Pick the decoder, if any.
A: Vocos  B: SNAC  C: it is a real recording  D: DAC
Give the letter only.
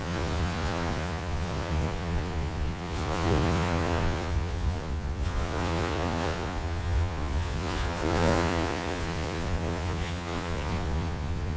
A